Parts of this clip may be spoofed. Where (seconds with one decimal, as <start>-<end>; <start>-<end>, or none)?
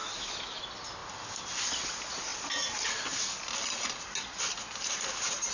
0.0-0.6